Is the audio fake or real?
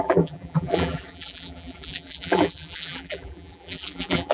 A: fake